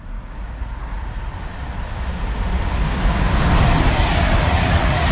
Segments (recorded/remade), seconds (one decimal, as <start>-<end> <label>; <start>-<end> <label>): 0.0-1.3 remade; 1.3-4.4 recorded; 4.4-5.1 remade